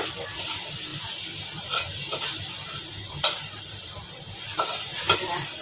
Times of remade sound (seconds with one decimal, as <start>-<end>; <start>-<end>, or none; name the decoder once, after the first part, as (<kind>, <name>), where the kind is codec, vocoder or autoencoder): none